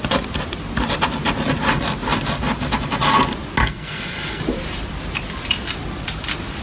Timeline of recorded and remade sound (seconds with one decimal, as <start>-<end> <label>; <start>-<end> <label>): 0.0-3.6 recorded; 3.6-4.4 remade; 4.4-6.6 recorded